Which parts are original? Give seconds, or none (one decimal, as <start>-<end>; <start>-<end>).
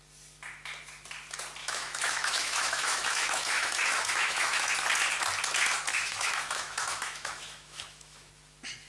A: 0.0-1.6; 4.7-5.9; 8.3-8.9